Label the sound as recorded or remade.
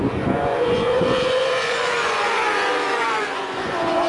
remade